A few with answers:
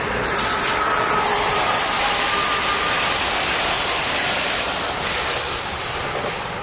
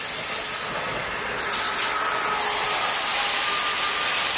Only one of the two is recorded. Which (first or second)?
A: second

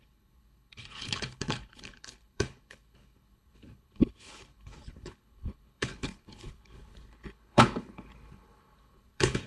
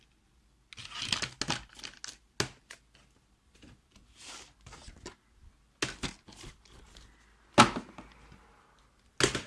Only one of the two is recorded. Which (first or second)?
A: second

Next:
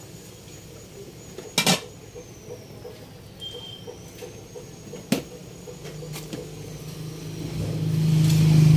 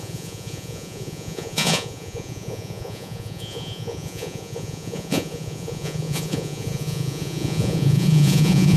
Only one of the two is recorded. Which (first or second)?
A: first